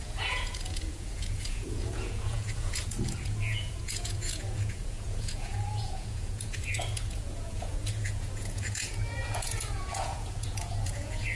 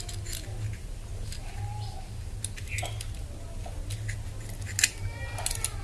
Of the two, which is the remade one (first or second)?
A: first